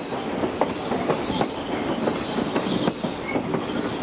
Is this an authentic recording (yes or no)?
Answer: yes